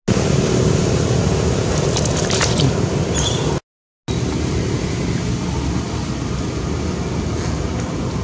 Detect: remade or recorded recorded